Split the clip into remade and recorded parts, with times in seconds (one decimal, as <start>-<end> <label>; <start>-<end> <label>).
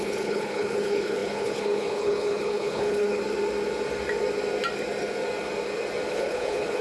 0.0-3.2 remade; 3.2-6.1 recorded; 6.1-6.8 remade